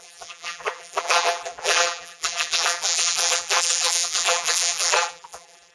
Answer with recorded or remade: remade